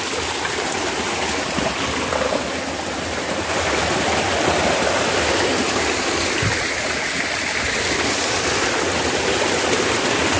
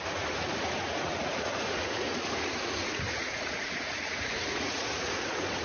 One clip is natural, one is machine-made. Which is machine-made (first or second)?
second